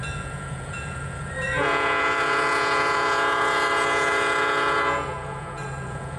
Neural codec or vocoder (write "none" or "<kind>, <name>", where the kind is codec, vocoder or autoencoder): vocoder, Vocos